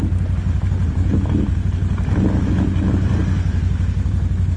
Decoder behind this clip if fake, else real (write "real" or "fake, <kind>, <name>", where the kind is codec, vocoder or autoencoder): real